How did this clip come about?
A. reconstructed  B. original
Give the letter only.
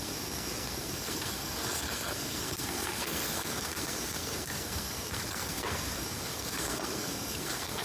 A